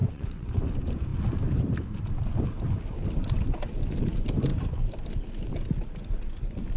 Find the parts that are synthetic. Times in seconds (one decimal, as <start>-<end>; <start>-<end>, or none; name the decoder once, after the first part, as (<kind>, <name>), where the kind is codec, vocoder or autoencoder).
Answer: 0.0-0.6 (vocoder, WaveNeXt)